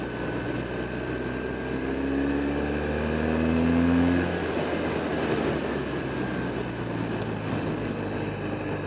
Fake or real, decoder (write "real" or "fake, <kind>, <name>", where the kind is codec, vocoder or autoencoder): real